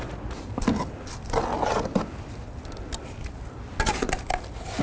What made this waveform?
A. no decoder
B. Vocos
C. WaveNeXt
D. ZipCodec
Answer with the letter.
A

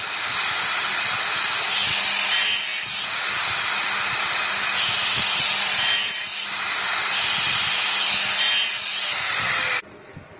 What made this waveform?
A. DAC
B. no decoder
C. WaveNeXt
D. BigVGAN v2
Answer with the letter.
B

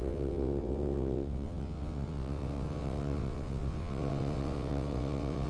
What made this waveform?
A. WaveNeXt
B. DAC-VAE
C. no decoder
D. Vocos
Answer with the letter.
A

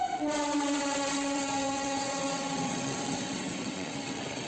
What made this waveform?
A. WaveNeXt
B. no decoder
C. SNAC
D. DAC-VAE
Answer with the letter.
A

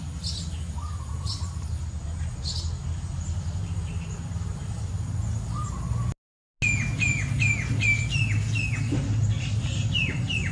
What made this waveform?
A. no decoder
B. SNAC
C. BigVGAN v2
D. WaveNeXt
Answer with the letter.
A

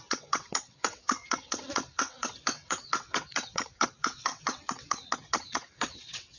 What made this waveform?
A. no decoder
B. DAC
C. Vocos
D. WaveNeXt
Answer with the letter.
D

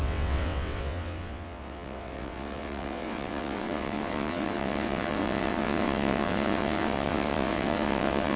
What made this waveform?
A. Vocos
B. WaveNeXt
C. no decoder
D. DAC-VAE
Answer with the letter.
B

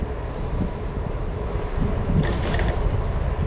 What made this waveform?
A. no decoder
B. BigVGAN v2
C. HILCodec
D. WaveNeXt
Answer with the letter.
A